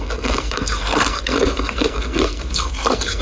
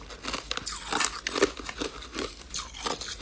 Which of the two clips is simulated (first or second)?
first